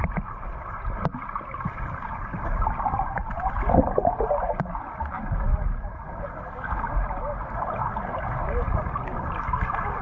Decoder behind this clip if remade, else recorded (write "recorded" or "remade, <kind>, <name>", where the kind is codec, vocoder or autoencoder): recorded